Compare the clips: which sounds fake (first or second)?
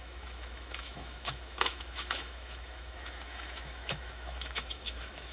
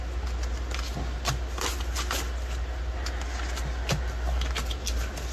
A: first